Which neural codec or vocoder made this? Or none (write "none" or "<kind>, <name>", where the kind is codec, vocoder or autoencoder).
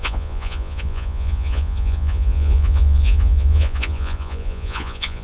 vocoder, Vocos